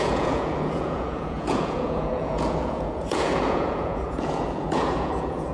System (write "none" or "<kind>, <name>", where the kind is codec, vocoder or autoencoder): vocoder, Vocos